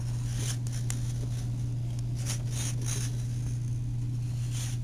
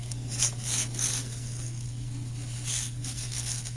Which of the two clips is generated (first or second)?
second